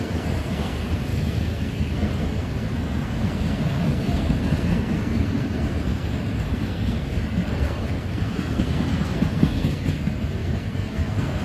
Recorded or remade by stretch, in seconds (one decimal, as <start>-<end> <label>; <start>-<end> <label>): 0.0-11.4 remade